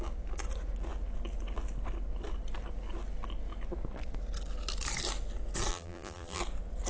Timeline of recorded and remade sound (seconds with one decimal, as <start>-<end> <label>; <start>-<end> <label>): 0.0-5.7 recorded; 5.7-6.4 remade; 6.4-6.9 recorded